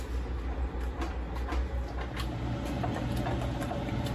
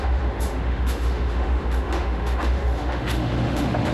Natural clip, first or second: first